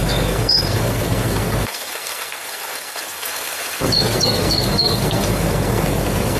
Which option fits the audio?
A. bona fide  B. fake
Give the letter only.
B